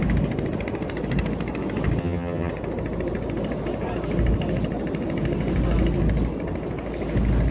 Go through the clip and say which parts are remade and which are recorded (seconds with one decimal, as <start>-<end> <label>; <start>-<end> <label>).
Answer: 0.0-2.0 recorded; 2.0-2.5 remade; 2.5-7.5 recorded